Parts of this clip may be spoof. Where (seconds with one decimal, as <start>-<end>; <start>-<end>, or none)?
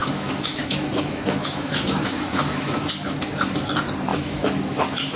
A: 0.0-2.9; 4.1-5.2